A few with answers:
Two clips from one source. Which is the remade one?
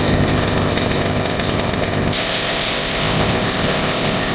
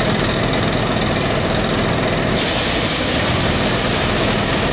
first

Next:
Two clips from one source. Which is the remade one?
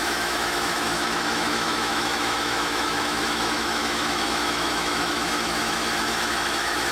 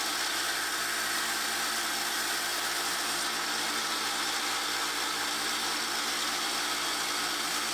first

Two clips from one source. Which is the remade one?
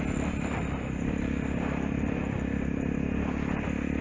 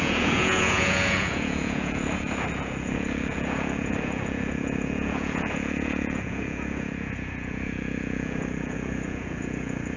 second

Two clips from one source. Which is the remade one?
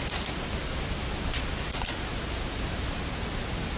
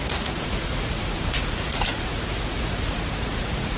second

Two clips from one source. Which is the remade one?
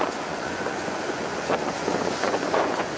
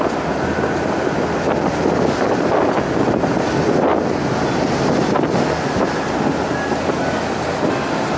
first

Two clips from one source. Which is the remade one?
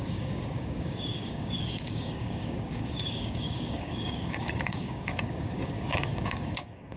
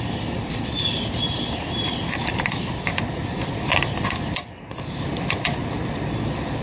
first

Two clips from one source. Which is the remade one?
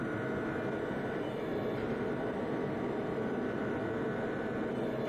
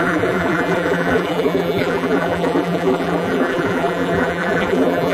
second